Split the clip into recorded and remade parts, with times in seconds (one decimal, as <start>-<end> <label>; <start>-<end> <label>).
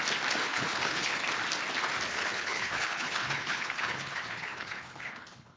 0.0-0.4 recorded; 0.4-1.2 remade; 1.2-2.1 recorded; 2.1-5.6 remade